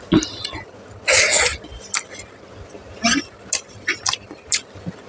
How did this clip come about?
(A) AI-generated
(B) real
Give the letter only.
B